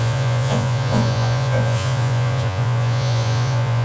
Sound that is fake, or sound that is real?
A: fake